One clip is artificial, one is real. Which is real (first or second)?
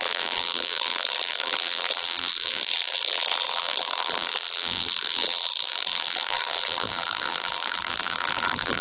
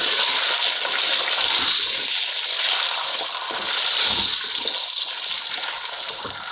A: second